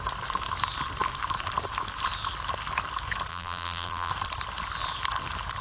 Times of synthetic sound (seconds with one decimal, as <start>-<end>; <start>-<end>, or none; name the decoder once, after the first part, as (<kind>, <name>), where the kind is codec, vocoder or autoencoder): 3.3-4.1 (vocoder, BigVGAN v2)